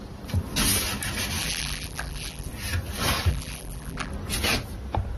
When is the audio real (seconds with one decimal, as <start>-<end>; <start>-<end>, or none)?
0.0-1.4; 2.5-3.3; 4.1-5.2

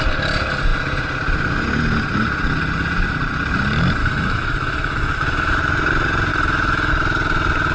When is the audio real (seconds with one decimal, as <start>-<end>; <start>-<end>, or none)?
0.0-4.0; 5.6-6.3; 6.9-7.7